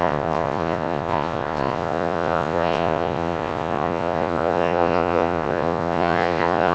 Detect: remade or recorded remade